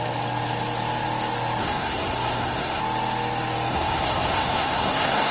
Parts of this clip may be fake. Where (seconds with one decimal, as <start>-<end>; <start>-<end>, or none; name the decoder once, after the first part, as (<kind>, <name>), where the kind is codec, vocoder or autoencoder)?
1.6-2.8 (codec, SNAC); 3.7-5.3